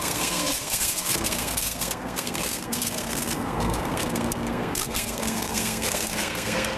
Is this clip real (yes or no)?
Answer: no